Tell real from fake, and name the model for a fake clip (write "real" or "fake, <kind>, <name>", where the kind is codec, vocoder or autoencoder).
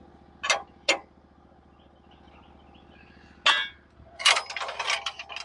real